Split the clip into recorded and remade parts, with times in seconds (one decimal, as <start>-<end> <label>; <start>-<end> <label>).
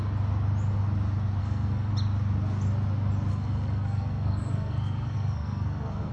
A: 0.0-1.4 recorded; 1.4-1.9 remade; 1.9-3.3 recorded; 3.3-6.1 remade